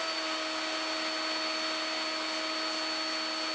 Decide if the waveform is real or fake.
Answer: real